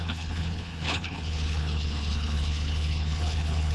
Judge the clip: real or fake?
fake